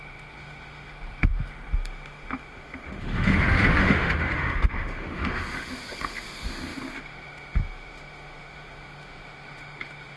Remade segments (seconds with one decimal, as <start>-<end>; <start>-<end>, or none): 0.0-10.2